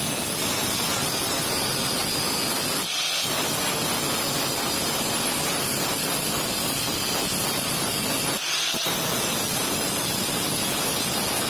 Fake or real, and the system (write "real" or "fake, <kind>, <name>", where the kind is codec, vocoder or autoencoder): real